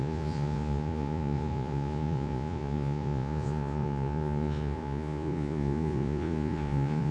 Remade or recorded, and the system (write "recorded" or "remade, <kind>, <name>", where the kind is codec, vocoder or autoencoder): remade, vocoder, Vocos